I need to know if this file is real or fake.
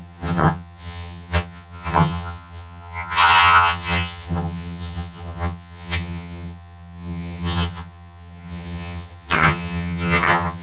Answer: fake